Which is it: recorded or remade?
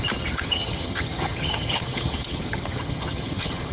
remade